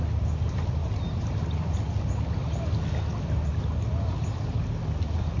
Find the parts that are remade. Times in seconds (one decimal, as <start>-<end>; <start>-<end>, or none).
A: none